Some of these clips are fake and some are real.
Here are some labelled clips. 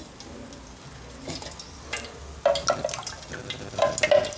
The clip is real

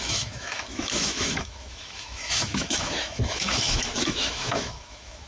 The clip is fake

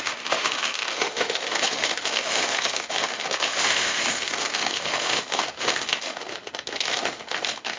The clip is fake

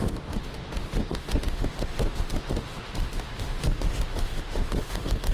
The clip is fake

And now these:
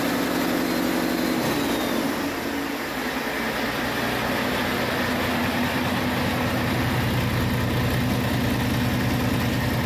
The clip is real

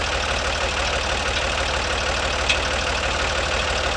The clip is real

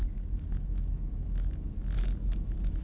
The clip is fake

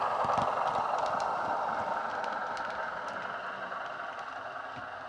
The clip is real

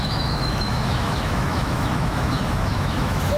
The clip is fake